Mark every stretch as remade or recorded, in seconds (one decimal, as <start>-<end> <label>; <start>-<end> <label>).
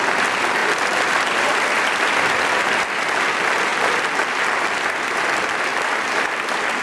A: 0.0-0.6 recorded; 0.6-2.6 remade; 2.6-6.8 recorded